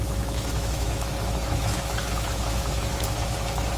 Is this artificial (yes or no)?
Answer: yes